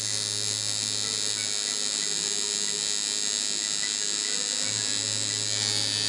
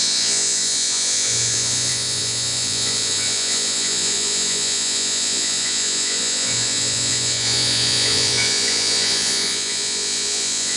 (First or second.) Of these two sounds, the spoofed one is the second